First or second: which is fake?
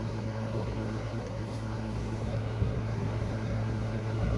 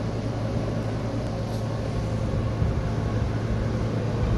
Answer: first